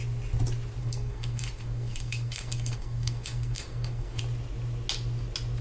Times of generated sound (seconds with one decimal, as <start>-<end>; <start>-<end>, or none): 0.8-4.2